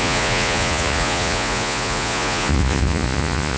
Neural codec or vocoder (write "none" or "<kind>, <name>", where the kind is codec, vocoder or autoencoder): vocoder, Vocos